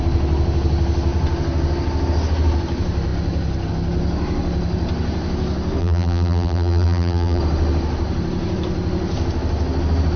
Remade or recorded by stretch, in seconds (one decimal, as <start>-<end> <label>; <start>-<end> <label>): 0.0-5.8 recorded; 5.8-7.4 remade; 7.4-10.2 recorded